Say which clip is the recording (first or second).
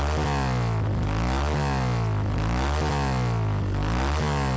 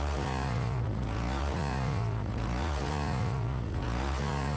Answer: first